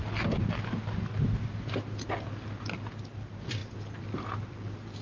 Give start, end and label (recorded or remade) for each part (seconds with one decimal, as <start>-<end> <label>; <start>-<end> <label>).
0.0-5.0 recorded